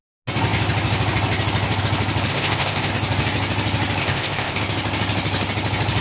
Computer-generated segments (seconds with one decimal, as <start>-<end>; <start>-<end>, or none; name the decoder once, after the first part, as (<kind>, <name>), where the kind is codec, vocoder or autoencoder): 2.3-2.9 (codec, ZipCodec); 4.0-4.6